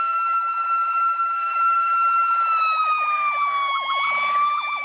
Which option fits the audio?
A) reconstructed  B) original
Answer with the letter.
A